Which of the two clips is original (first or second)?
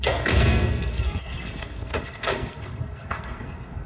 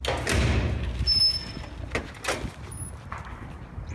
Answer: second